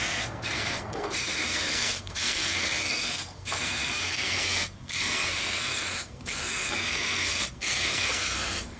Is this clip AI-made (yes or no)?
yes